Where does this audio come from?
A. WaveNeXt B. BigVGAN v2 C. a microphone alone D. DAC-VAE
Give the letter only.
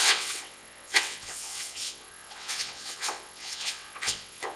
A